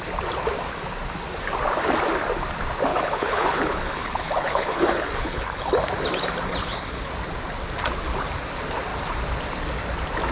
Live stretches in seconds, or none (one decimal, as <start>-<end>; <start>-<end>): 0.0-2.9; 5.7-6.6; 7.1-10.3